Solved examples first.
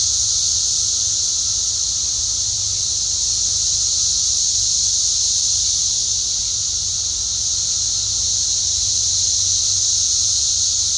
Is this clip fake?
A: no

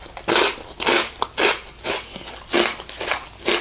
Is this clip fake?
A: no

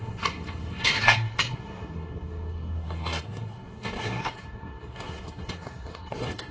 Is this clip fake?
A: yes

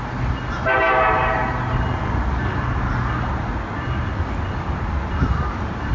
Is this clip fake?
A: no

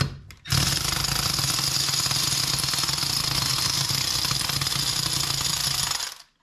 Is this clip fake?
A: no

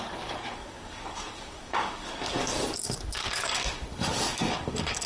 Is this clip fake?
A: yes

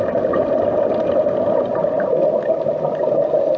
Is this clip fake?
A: no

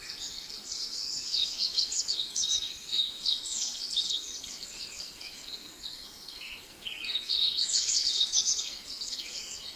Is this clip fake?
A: yes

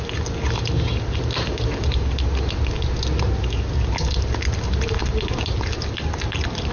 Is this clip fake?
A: no